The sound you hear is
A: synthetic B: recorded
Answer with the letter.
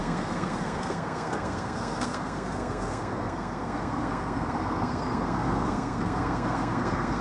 A